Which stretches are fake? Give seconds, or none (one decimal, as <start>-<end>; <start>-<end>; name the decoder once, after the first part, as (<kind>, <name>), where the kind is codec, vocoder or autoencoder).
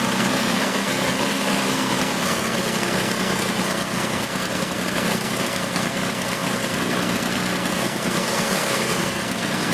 0.0-9.7 (codec, SNAC)